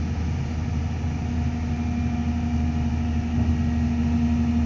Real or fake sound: real